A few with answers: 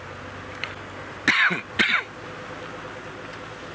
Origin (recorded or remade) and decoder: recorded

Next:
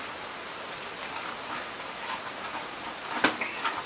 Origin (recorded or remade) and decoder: recorded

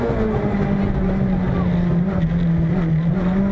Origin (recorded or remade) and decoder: recorded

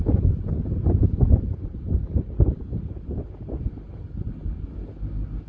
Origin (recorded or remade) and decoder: recorded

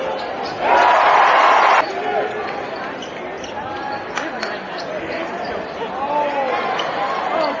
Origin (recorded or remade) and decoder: recorded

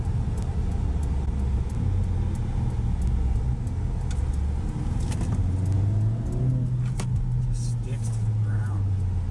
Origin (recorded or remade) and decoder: recorded